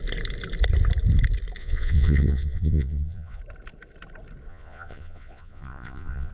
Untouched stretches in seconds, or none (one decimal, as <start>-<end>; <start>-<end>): 0.0-1.6; 3.4-4.5